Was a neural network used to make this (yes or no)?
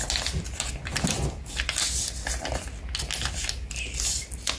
no